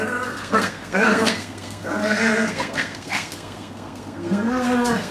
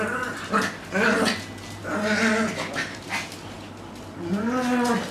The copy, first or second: first